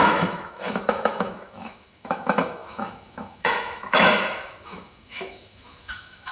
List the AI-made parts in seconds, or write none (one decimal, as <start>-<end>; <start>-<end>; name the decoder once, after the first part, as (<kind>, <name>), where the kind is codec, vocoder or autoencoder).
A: 0.0-6.3 (autoencoder, DAC-VAE)